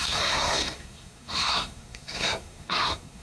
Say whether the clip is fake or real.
fake